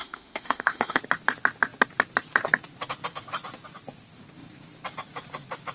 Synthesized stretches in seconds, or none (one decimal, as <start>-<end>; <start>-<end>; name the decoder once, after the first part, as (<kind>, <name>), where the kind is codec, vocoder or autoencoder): 0.0-1.0 (autoencoder, DAC-VAE)

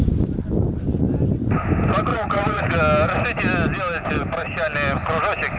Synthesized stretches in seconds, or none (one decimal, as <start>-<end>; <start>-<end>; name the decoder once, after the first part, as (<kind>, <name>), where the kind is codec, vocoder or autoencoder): 2.1-2.7 (vocoder, Vocos)

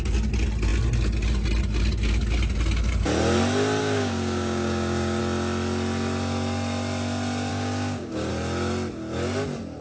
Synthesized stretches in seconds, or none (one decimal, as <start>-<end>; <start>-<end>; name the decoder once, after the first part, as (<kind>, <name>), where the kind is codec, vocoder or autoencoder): 3.8-5.2 (codec, DAC); 7.5-8.3

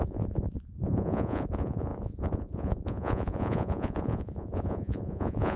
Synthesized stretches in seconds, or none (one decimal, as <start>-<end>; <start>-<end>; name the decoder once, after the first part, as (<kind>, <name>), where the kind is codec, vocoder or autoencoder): 0.0-5.6 (vocoder, Vocos)

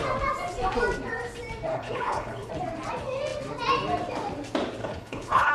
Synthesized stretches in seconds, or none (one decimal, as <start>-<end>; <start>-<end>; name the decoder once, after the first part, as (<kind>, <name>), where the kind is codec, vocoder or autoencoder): 1.7-2.5 (codec, HILCodec); 4.8-5.5